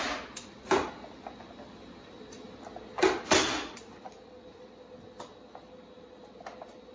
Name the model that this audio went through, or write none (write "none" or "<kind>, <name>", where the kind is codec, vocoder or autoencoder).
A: none